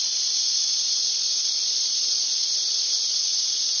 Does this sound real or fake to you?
fake